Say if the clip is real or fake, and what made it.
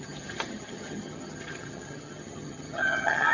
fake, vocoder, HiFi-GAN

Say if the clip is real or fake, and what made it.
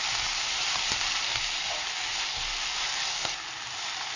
real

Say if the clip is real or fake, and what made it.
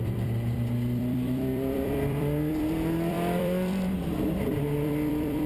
fake, vocoder, BigVGAN v2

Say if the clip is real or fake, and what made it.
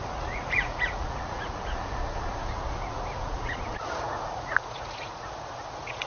fake, vocoder, Vocos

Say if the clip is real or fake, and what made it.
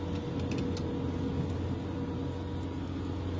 real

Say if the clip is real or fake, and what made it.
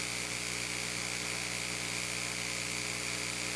real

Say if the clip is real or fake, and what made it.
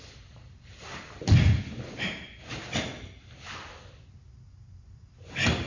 real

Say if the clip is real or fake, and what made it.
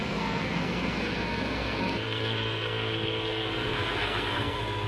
fake, codec, SNAC